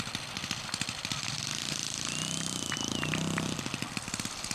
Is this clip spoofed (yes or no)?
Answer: no